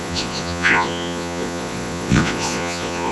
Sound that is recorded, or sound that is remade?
remade